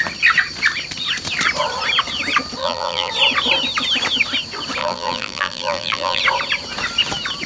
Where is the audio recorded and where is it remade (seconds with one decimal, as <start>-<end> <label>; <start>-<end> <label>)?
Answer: 0.0-2.6 recorded; 2.6-3.1 remade; 3.1-4.8 recorded; 4.8-6.2 remade; 6.2-7.5 recorded